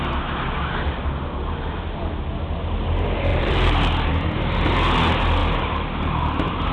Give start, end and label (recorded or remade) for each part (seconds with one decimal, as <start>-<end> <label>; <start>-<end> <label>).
0.0-3.3 recorded; 3.3-4.1 remade; 4.1-5.4 recorded; 5.4-6.2 remade; 6.2-6.7 recorded